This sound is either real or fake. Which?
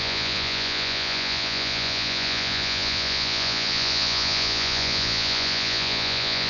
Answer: fake